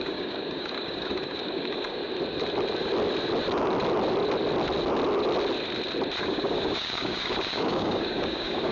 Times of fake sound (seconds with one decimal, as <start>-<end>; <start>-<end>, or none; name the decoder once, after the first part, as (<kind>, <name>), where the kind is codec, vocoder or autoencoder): 0.0-2.0 (codec, DAC); 6.2-8.7